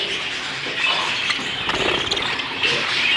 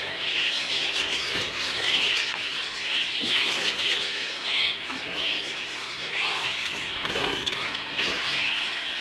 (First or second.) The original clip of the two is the first